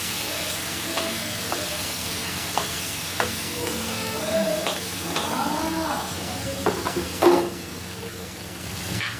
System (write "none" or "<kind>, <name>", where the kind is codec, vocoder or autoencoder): codec, SNAC